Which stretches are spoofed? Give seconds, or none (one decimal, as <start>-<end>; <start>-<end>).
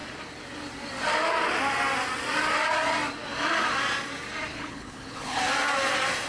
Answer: 4.5-5.4